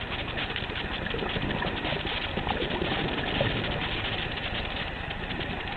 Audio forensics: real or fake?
real